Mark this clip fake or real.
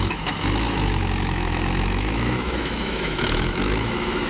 fake